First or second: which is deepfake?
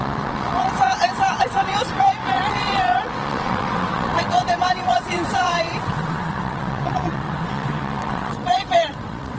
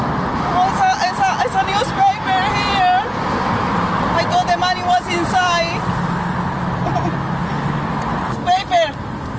first